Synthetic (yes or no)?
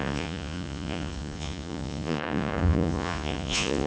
yes